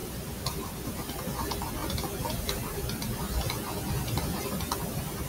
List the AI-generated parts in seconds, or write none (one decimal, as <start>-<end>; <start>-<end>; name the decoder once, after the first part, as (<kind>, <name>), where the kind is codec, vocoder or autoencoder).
0.0-0.9 (vocoder, BigVGAN v2)